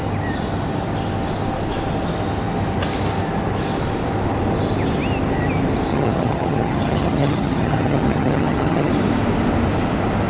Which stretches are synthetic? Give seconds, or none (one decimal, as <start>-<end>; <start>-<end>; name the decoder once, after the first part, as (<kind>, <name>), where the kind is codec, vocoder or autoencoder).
5.9-8.9 (vocoder, HiFi-GAN)

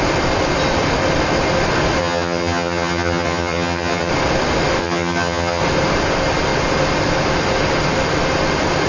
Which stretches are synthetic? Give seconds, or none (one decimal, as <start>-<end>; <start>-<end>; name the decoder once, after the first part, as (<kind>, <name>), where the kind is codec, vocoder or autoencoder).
2.0-4.1 (vocoder, HiFi-GAN); 4.8-5.6

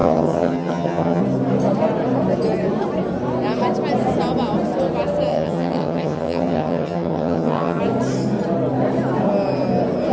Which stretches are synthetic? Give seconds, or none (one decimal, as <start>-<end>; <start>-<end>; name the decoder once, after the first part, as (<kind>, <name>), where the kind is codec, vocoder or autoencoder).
0.0-1.2 (vocoder, HiFi-GAN); 5.3-7.8

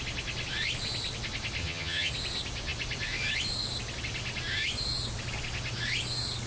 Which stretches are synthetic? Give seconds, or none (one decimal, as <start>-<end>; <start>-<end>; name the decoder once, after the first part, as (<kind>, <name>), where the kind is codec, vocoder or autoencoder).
1.6-2.1 (vocoder, HiFi-GAN)

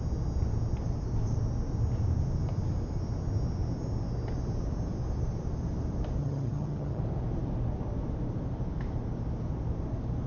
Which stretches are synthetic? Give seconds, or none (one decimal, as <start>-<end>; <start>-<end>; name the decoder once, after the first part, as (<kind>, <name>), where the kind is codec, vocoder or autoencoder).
6.2-7.0 (vocoder, HiFi-GAN)

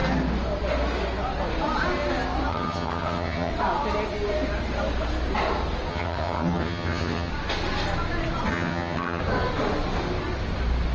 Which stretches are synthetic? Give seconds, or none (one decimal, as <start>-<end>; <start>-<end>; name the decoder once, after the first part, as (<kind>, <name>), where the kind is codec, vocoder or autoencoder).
2.5-3.5 (vocoder, HiFi-GAN); 5.9-7.3; 8.5-9.2